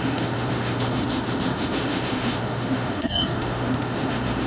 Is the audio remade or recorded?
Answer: remade